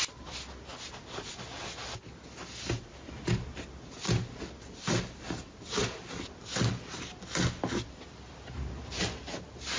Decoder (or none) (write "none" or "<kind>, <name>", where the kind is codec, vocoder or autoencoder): none